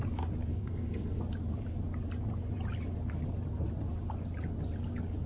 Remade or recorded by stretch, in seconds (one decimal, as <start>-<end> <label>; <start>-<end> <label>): 0.0-0.5 recorded; 0.5-1.2 remade; 1.2-5.3 recorded